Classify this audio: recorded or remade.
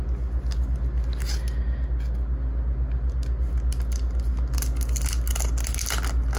recorded